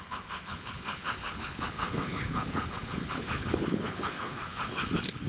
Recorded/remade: remade